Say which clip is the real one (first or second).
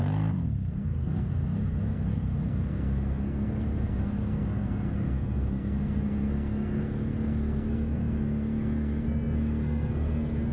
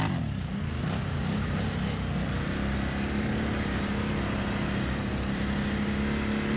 second